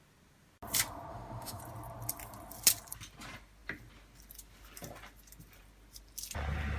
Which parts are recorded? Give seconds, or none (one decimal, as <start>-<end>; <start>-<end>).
0.0-1.1; 1.6-6.8